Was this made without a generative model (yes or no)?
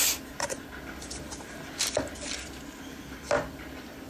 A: no